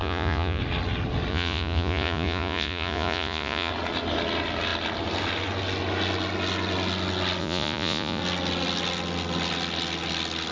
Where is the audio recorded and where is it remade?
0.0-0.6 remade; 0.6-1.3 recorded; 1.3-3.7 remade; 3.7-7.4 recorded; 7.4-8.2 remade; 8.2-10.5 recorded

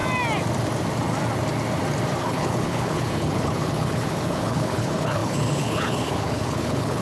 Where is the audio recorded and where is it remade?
0.0-2.2 recorded; 2.2-7.0 remade

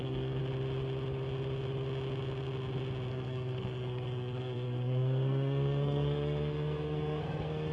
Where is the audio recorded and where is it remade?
0.0-0.4 remade; 0.4-3.1 recorded; 3.1-7.7 remade